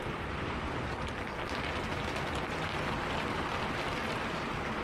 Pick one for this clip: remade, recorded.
recorded